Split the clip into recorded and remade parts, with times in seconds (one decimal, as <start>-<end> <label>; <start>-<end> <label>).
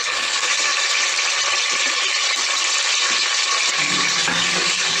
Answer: 0.0-0.7 remade; 0.7-3.7 recorded; 3.7-5.0 remade